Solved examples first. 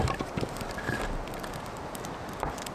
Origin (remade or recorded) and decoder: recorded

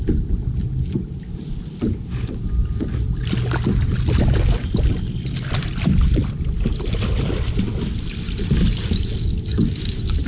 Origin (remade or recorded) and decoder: recorded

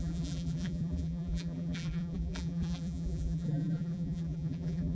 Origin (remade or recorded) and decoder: remade, vocoder, BigVGAN v2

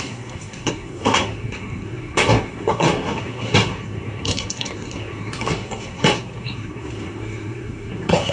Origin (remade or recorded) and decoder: remade, codec, SNAC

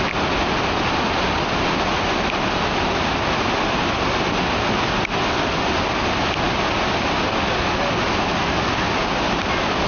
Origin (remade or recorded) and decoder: recorded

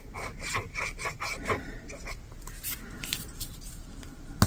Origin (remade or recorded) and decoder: remade, vocoder, BigVGAN v2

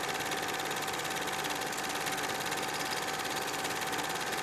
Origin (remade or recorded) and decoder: recorded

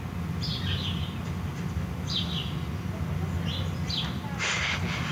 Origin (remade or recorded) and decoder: recorded